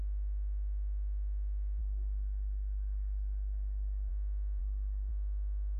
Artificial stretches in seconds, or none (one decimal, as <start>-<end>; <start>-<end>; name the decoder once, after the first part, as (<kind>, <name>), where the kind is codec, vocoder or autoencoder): 1.8-4.1 (codec, SNAC); 4.6-5.1